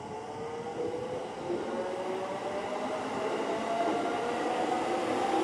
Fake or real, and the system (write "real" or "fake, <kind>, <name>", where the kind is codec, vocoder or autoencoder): real